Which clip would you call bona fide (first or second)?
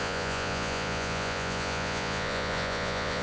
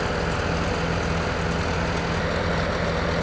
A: second